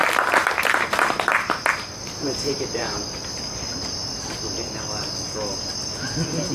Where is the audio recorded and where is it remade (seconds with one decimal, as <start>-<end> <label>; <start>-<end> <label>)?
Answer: 0.0-3.9 remade; 3.9-6.5 recorded